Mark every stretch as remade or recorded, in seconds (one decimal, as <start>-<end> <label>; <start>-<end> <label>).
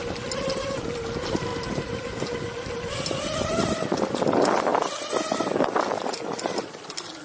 0.0-7.2 recorded